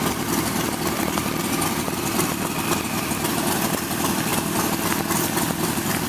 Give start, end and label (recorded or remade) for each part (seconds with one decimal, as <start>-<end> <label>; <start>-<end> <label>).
0.0-6.1 recorded